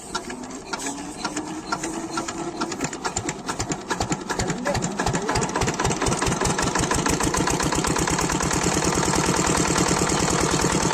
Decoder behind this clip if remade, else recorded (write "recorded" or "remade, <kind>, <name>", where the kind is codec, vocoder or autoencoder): recorded